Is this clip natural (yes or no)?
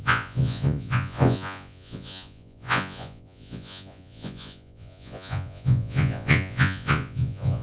no